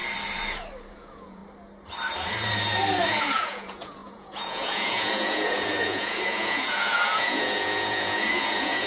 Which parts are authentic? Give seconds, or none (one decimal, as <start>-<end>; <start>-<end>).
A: 0.0-0.9; 1.4-3.2